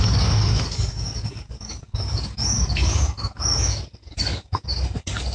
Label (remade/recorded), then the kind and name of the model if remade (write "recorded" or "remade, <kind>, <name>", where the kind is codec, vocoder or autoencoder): remade, codec, DAC